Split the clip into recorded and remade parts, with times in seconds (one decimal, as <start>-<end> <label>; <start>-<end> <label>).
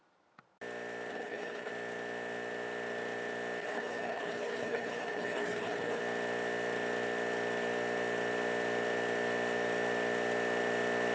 0.0-1.1 recorded; 1.1-1.7 remade; 1.7-3.6 recorded; 3.6-6.0 remade; 6.0-11.1 recorded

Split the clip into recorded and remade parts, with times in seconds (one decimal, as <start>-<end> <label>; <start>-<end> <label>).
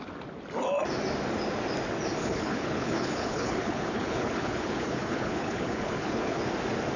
0.0-2.2 recorded; 2.2-6.4 remade; 6.4-7.0 recorded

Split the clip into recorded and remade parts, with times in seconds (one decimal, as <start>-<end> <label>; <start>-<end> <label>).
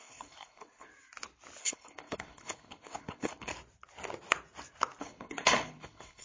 0.0-0.9 remade; 0.9-1.6 recorded; 1.6-3.5 remade; 3.5-5.0 recorded; 5.0-6.2 remade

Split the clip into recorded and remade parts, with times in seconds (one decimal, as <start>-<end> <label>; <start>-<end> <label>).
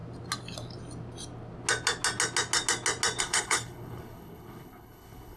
0.0-3.2 recorded; 3.2-5.4 remade